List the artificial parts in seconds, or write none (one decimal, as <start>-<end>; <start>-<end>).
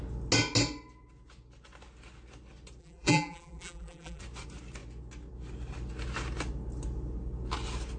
2.8-4.2